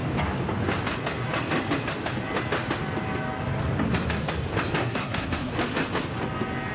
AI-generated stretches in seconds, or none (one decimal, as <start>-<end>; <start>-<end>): 4.8-5.5